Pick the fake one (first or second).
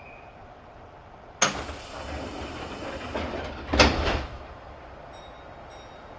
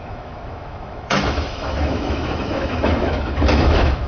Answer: second